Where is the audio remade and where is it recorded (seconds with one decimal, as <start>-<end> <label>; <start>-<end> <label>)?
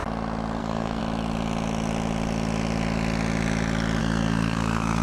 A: 0.0-0.6 recorded; 0.6-1.0 remade; 1.0-4.0 recorded; 4.0-5.0 remade